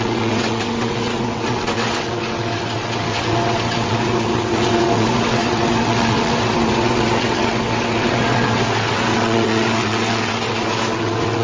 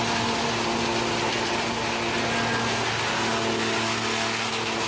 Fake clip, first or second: first